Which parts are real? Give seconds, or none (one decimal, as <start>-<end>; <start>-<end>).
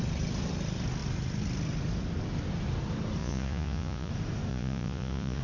0.0-3.2; 4.1-4.5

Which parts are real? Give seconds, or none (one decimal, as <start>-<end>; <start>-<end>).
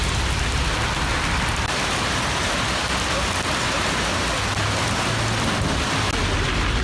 0.0-6.8